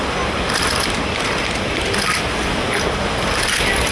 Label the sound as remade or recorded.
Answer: recorded